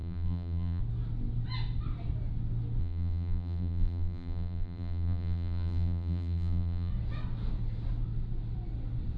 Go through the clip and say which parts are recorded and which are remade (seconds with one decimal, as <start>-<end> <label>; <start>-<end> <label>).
0.0-0.8 remade; 0.8-2.8 recorded; 2.8-6.9 remade; 6.9-9.2 recorded